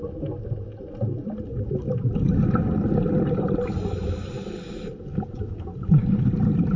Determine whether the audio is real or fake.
real